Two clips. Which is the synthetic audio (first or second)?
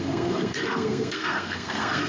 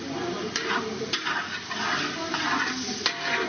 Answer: first